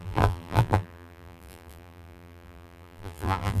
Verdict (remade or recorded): remade